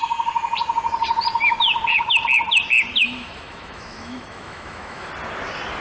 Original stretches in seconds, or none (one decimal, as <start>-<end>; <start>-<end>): 0.0-3.0; 5.1-5.8